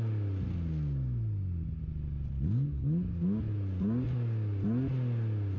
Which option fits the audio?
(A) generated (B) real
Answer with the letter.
B